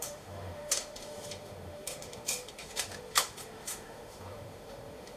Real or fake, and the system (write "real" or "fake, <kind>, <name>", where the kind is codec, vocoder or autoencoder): fake, autoencoder, DAC-VAE